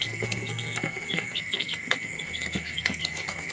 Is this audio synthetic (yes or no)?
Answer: yes